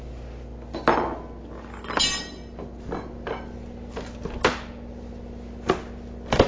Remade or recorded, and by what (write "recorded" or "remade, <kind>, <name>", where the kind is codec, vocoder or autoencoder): recorded